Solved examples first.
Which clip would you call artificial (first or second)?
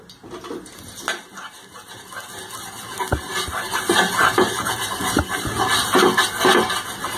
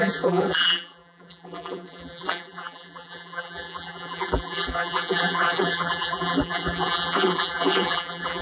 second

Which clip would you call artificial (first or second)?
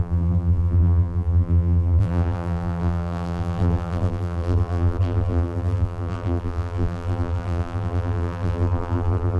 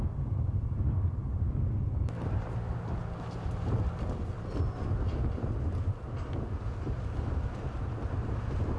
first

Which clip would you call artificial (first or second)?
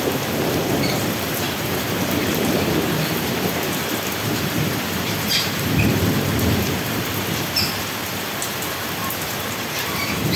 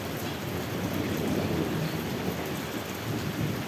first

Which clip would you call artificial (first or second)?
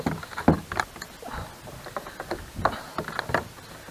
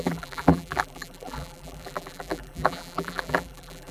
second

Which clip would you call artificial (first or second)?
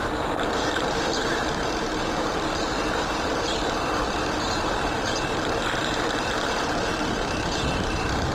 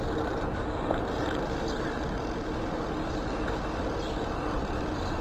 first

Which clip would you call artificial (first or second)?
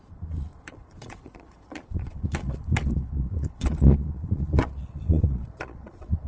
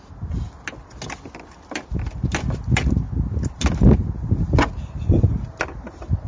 first